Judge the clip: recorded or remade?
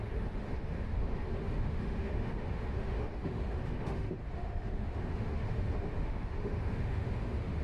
remade